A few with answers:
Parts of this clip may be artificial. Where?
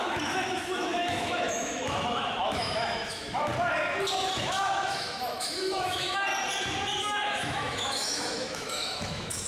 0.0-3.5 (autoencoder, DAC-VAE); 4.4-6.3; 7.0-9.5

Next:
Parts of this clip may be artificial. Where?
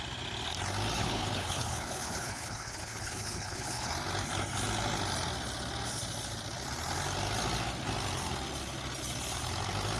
1.0-3.9 (codec, HILCodec)